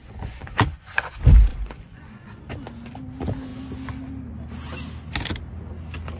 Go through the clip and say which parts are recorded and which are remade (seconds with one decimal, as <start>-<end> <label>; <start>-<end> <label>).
0.0-1.1 remade; 1.1-1.5 recorded; 1.5-2.4 remade; 2.4-6.2 recorded